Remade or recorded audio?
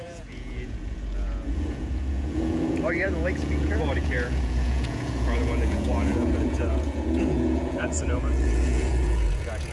remade